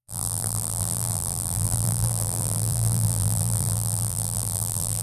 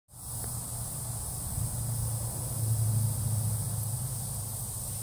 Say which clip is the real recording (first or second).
second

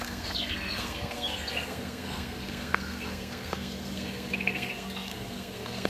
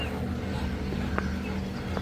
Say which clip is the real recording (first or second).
second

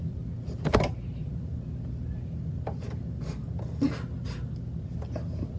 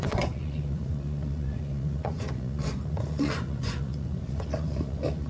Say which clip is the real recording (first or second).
first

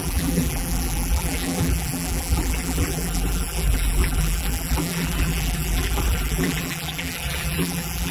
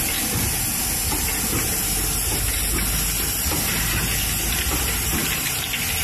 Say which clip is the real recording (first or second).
second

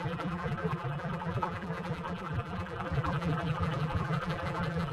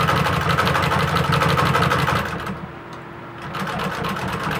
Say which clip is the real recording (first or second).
second